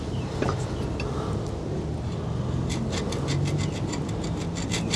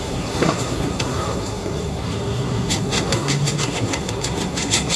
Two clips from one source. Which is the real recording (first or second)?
first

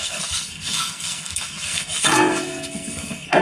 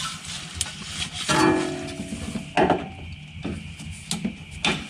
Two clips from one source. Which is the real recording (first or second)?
second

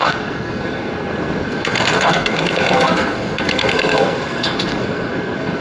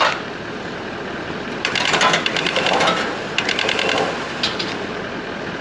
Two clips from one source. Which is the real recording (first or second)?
second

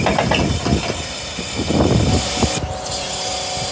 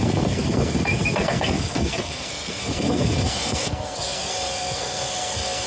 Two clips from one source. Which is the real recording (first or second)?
first